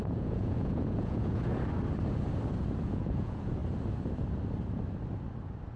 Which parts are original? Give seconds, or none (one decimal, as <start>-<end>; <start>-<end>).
1.5-2.8; 3.6-5.8